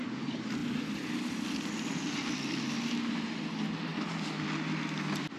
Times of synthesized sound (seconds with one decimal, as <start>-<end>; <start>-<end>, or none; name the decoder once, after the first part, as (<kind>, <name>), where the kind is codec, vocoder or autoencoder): 0.6-2.9 (vocoder, BigVGAN v2)

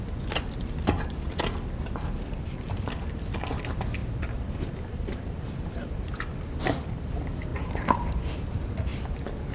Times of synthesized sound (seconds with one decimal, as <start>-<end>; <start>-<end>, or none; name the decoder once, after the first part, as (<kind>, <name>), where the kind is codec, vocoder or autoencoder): 4.0-6.1 (vocoder, BigVGAN v2); 7.5-8.3

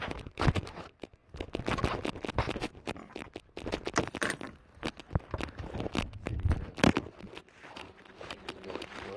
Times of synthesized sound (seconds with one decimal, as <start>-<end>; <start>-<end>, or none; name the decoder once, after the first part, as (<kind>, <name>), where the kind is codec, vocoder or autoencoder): 0.0-1.2 (vocoder, BigVGAN v2); 2.3-3.2; 7.7-9.2

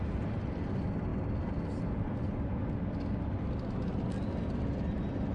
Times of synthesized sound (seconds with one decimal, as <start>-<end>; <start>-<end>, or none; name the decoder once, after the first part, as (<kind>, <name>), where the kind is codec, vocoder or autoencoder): none

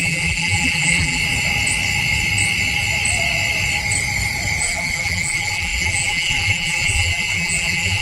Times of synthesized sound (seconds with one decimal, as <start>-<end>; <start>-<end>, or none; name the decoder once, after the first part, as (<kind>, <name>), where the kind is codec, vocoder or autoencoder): 0.0-1.2 (vocoder, BigVGAN v2); 4.6-8.0

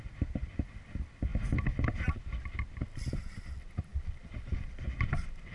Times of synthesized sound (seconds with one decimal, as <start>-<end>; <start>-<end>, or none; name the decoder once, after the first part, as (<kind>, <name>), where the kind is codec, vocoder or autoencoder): 3.9-5.1 (vocoder, BigVGAN v2)

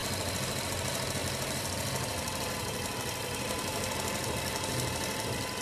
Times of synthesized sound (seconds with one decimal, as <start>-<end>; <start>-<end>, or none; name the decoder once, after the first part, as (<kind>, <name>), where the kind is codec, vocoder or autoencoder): 0.0-0.7 (vocoder, BigVGAN v2); 1.2-2.9